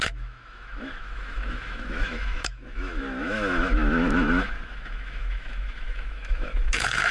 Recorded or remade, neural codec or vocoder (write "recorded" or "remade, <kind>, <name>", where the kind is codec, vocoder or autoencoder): remade, autoencoder, DAC-VAE